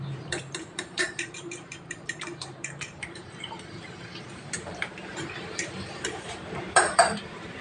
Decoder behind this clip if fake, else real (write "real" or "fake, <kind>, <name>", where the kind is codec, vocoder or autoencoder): fake, vocoder, BigVGAN v2